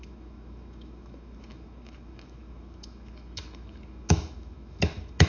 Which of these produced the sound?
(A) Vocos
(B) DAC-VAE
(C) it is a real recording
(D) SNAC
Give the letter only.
B